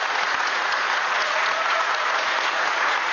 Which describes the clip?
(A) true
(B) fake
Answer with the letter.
B